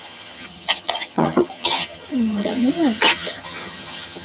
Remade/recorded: remade